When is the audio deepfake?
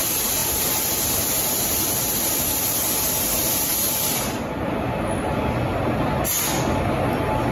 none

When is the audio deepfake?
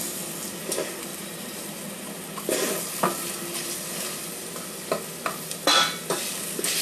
1.1-1.7 (vocoder, BigVGAN v2)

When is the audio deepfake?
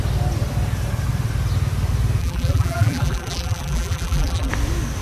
2.2-4.5 (vocoder, BigVGAN v2)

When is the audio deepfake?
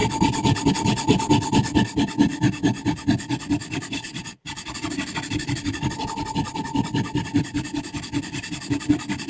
3.6-8.5 (vocoder, BigVGAN v2)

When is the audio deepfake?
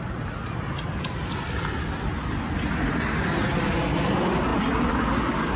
none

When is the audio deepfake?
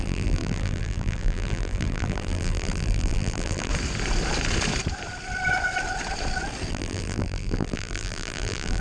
0.0-3.7 (vocoder, BigVGAN v2); 6.7-8.8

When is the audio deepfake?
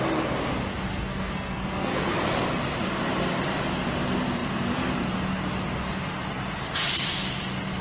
0.9-2.2 (codec, SNAC)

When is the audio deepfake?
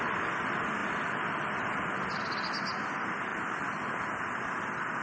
3.3-3.9 (vocoder, BigVGAN v2)